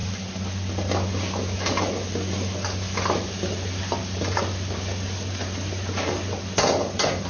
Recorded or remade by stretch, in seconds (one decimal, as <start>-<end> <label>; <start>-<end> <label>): 0.0-7.3 recorded